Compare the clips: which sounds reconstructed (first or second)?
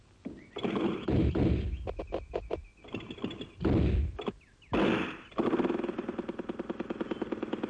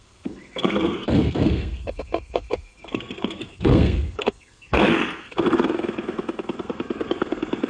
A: second